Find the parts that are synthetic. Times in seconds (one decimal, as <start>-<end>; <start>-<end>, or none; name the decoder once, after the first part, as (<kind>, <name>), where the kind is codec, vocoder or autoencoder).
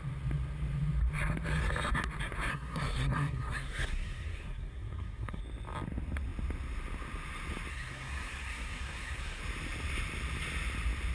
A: 2.5-5.4 (codec, SNAC); 7.7-9.4